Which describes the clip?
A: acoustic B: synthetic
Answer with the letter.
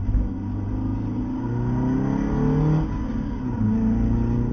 A